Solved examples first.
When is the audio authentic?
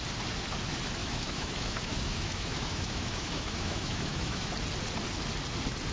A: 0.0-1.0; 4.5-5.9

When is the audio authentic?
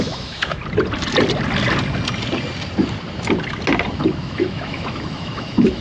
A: 0.6-4.1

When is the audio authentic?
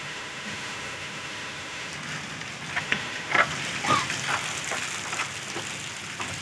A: 1.9-2.8; 3.3-6.4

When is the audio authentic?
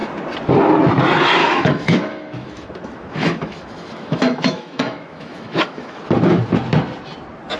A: 0.0-1.4; 6.0-7.6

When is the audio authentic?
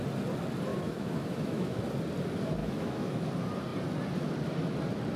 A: 0.0-0.7; 1.9-2.6; 3.3-5.2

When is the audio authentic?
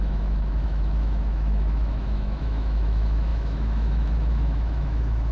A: none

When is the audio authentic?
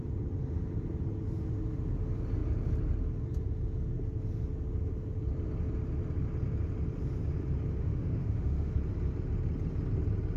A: 0.0-7.8; 8.7-10.4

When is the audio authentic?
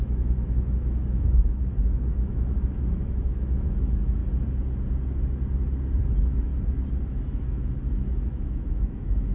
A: 4.2-6.0; 6.5-7.1